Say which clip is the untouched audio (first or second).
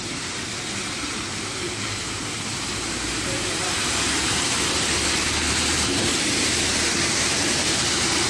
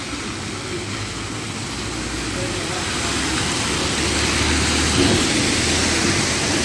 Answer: second